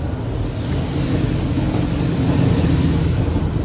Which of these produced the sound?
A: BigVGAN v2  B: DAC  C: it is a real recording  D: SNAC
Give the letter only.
C